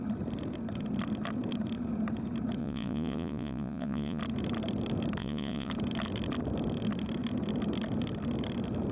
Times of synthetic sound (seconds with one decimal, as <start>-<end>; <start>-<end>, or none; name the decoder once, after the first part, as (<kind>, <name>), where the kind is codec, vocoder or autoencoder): 2.6-4.2 (vocoder, Vocos); 5.2-5.7